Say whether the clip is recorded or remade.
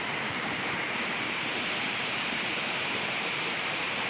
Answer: remade